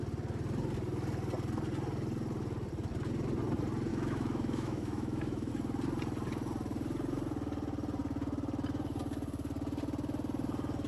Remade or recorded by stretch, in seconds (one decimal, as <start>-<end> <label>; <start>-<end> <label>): 0.0-3.9 recorded; 3.9-5.5 remade; 5.5-10.9 recorded